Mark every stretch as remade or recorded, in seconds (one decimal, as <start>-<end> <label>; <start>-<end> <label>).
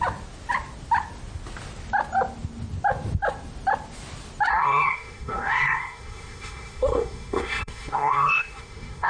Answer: 0.0-4.5 recorded; 4.5-9.1 remade